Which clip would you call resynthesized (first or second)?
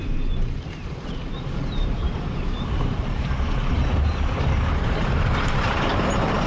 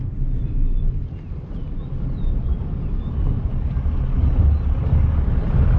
first